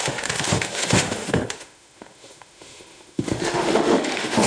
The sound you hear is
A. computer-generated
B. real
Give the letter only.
A